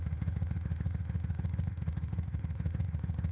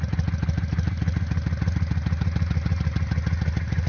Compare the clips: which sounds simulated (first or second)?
first